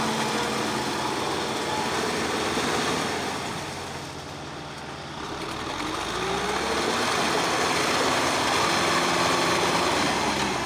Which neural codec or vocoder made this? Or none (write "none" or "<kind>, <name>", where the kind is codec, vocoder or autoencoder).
none